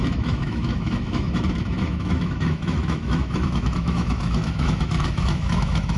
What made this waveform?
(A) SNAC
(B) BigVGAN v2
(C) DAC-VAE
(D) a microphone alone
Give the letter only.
C